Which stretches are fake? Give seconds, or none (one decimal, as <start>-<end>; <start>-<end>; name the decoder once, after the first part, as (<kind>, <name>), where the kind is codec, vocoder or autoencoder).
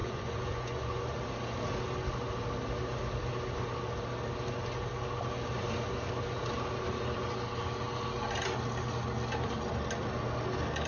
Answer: 0.0-1.0 (vocoder, Vocos)